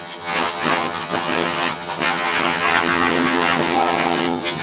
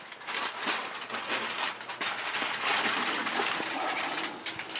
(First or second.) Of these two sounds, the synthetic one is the first